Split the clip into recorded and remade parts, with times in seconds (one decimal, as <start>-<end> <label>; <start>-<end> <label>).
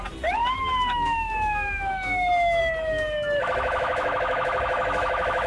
0.0-0.4 recorded; 0.4-2.6 remade; 2.6-3.4 recorded; 3.4-5.5 remade